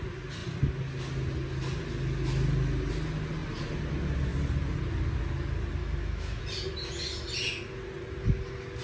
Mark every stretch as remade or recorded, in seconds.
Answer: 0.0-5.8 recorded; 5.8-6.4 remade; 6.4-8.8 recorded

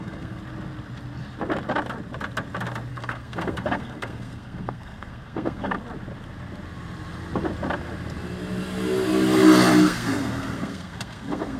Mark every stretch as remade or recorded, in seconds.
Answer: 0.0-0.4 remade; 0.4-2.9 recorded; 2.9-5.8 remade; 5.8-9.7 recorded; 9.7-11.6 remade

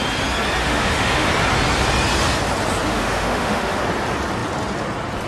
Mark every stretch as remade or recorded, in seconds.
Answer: 0.0-0.6 recorded; 0.6-1.3 remade; 1.3-2.9 recorded; 2.9-3.8 remade; 3.8-5.3 recorded